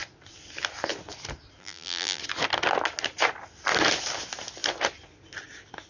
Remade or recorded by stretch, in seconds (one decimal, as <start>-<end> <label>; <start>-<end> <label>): 0.0-1.6 recorded; 1.6-2.2 remade; 2.2-5.9 recorded